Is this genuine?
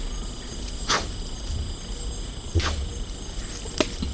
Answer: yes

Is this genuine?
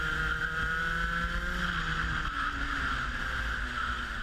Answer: yes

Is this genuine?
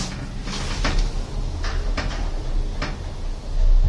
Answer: yes